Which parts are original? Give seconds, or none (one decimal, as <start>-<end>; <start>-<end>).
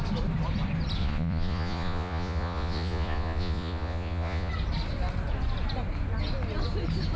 0.0-1.0; 4.5-7.2